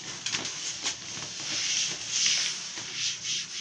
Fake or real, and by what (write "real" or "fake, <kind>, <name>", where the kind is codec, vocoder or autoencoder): real